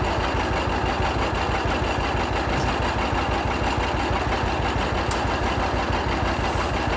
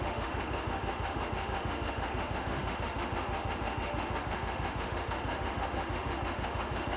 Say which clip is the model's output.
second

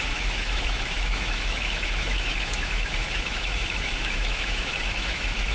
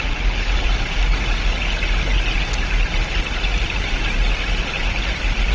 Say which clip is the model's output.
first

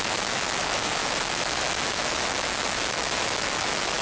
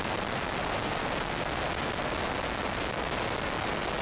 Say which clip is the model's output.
first